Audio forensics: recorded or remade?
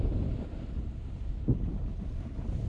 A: recorded